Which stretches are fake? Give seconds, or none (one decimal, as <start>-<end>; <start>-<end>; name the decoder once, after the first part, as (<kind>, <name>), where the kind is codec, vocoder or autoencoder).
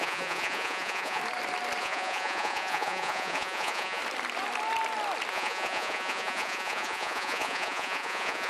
0.0-1.2 (vocoder, Vocos); 1.8-4.0; 5.3-8.5